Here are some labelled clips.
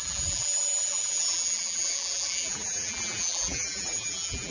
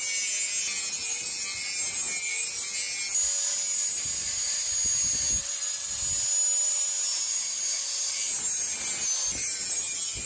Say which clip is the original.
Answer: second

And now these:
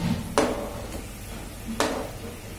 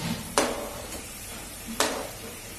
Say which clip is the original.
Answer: first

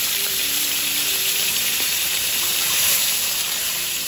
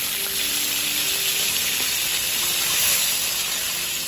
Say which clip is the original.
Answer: second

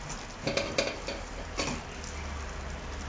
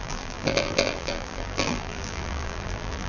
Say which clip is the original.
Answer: first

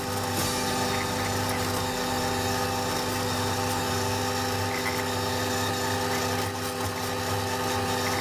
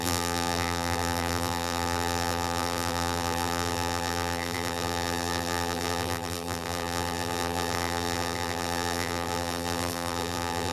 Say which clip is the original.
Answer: first